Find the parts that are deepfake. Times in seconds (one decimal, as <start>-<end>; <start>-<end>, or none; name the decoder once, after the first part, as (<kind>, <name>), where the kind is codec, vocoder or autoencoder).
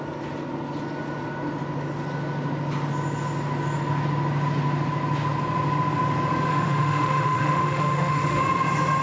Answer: 6.5-8.4 (autoencoder, DAC-VAE)